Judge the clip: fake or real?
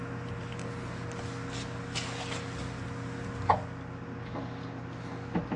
real